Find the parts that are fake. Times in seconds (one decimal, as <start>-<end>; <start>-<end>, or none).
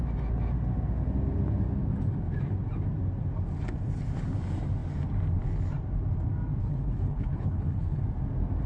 6.6-8.0